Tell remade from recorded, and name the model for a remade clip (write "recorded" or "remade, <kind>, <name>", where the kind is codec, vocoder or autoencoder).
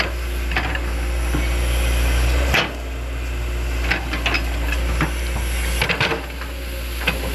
recorded